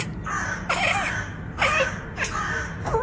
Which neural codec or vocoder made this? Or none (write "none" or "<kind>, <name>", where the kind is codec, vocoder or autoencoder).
none